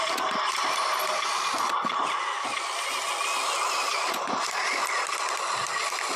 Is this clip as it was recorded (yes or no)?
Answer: yes